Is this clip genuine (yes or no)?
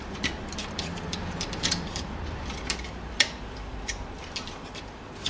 no